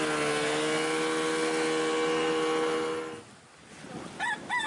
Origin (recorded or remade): recorded